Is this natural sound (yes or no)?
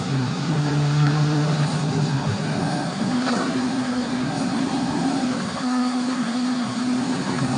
no